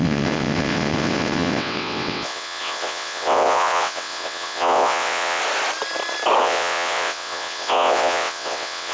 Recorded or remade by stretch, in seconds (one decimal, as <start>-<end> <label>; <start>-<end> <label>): 0.0-5.4 remade; 5.4-6.4 recorded; 6.4-8.9 remade